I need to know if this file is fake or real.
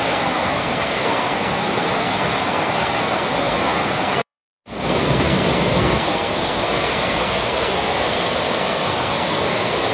fake